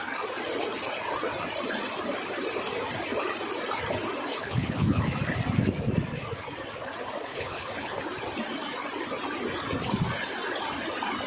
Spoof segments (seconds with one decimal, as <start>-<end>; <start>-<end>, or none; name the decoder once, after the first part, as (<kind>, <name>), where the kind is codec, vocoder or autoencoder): 4.3-5.0 (codec, HILCodec); 7.3-8.0